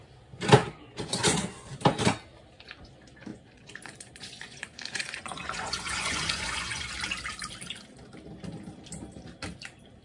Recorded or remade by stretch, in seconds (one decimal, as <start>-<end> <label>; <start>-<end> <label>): 0.0-0.6 recorded; 0.6-1.7 remade; 1.7-3.3 recorded; 3.3-6.9 remade; 6.9-10.0 recorded